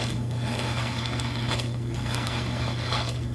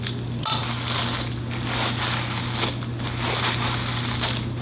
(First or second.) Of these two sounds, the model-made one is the first